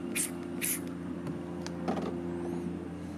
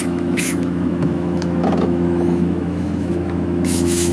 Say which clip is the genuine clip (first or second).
first